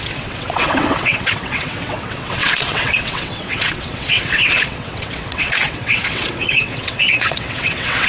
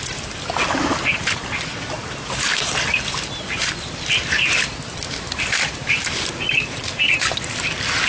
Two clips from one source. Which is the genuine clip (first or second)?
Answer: second